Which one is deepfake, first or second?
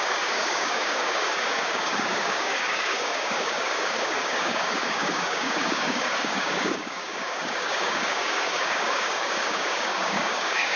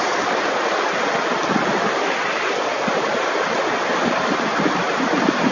first